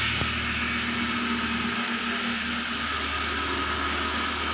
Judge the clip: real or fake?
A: real